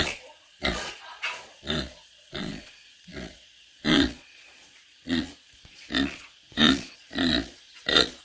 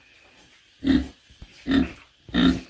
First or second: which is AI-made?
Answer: first